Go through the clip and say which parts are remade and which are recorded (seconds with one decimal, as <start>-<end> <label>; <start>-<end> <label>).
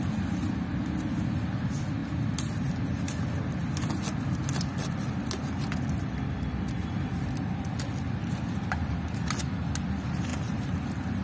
0.0-4.7 recorded; 4.7-7.6 remade; 7.6-10.3 recorded; 10.3-11.2 remade